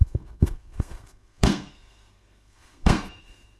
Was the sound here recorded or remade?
remade